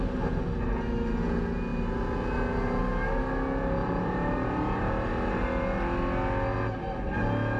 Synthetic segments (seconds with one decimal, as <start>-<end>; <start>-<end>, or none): 3.8-4.9